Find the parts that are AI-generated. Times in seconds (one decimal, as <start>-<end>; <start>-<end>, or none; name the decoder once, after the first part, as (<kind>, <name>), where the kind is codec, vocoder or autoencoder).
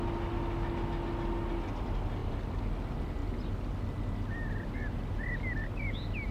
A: 2.2-2.7 (vocoder, BigVGAN v2)